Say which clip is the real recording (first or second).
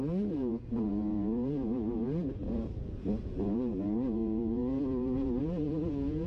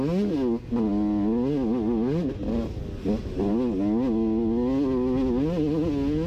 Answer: second